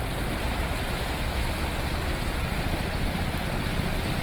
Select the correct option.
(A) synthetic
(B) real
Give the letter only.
B